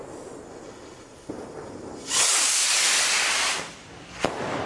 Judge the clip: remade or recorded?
recorded